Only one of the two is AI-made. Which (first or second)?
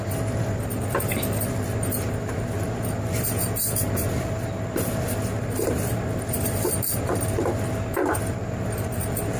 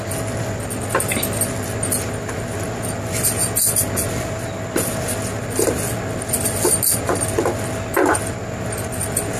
first